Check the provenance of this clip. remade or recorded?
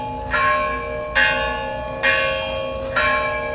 recorded